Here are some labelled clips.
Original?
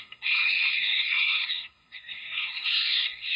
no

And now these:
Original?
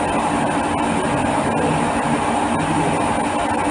yes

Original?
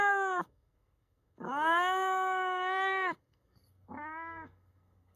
no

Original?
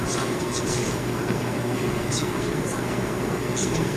no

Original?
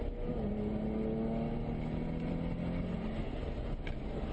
yes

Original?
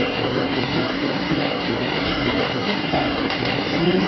no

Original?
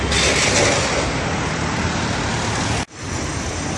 yes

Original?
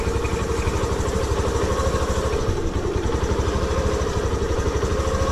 yes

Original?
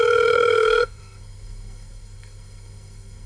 no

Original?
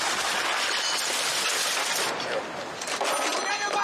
yes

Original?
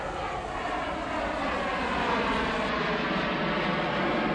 yes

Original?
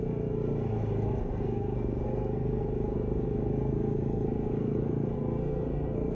no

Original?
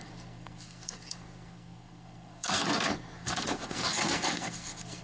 no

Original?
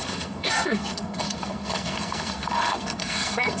no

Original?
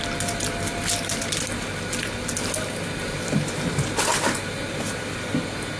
yes